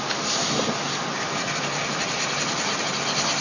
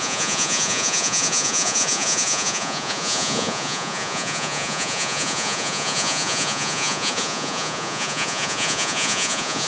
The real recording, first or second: first